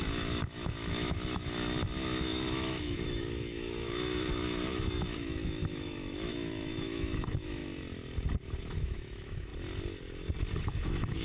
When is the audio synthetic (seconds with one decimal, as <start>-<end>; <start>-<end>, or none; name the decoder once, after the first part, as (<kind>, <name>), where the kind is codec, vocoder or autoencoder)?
0.0-7.6 (autoencoder, DAC-VAE); 8.6-9.5; 10.6-11.2